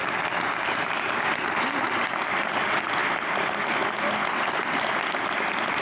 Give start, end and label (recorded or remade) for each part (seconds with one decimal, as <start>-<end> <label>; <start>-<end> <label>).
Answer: 0.0-5.8 recorded